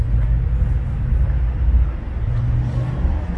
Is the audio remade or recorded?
recorded